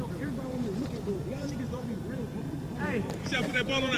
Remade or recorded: remade